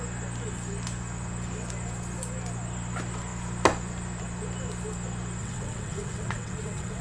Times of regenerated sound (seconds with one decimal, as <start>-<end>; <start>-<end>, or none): 5.4-7.0